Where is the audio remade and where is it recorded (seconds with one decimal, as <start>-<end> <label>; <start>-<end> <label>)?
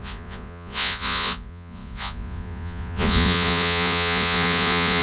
0.0-5.0 remade